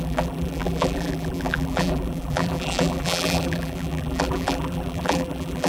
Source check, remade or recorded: remade